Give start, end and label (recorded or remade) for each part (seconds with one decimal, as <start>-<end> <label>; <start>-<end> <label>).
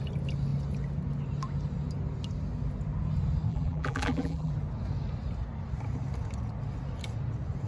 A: 0.0-3.5 recorded; 3.5-4.5 remade; 4.5-7.7 recorded